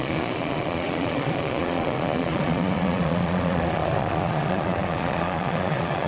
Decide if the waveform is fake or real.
fake